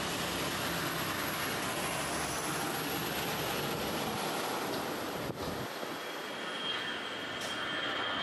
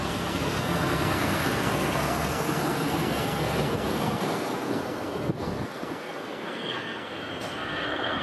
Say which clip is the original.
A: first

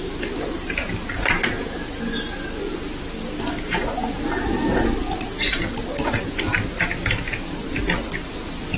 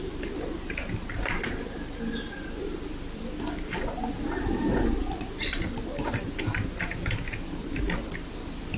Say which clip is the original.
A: first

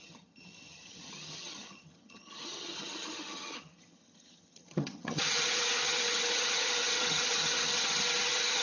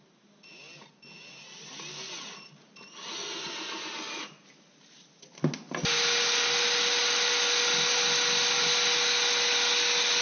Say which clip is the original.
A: second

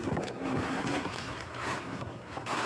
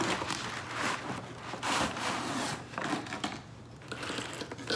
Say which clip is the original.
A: second